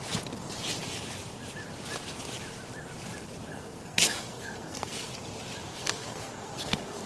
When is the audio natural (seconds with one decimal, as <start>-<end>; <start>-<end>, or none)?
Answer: 0.0-3.5; 5.1-5.7